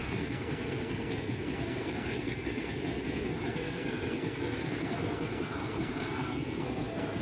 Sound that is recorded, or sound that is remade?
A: remade